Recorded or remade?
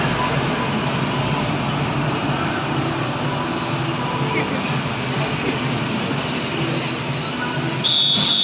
recorded